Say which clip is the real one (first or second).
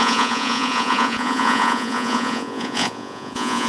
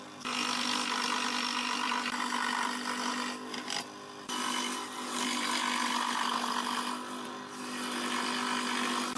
second